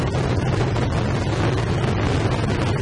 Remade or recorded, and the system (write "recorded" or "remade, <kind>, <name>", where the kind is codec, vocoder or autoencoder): recorded